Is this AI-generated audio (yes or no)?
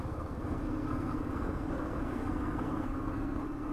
yes